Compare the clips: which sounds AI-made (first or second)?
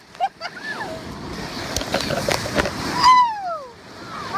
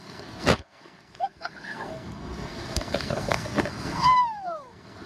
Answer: second